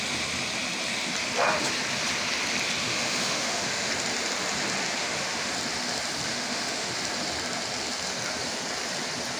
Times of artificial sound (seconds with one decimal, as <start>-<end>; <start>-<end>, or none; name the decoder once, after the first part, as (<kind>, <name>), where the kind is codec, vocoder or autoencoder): 2.8-3.9 (autoencoder, DAC-VAE); 5.0-5.5; 6.3-6.9